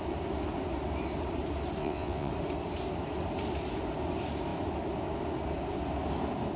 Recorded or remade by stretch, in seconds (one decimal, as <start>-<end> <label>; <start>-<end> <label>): 0.0-1.8 recorded; 1.8-2.3 remade; 2.3-6.6 recorded